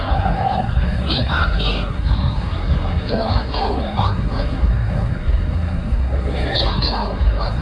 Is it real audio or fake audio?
fake